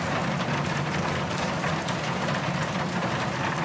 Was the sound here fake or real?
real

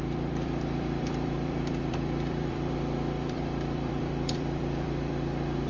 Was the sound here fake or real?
fake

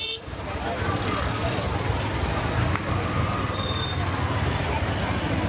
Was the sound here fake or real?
real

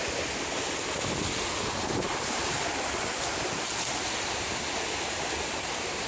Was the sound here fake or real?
real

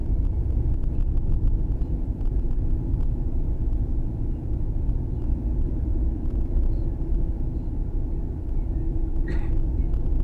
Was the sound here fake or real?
fake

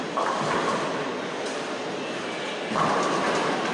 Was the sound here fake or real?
real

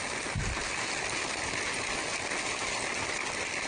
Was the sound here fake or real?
real